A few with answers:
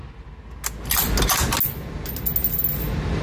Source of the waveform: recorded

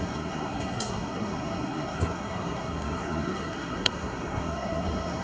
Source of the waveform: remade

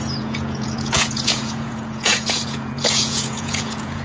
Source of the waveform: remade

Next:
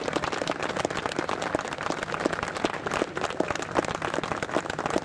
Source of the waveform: recorded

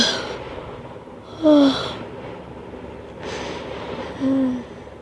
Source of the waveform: recorded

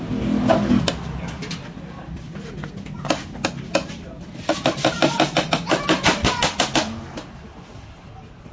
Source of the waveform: recorded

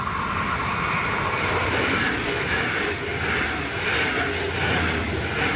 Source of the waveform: recorded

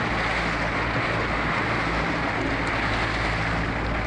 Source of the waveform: recorded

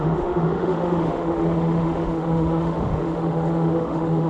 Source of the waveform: remade